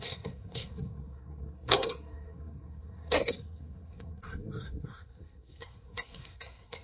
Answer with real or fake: fake